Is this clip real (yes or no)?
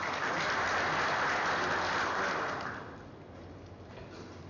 yes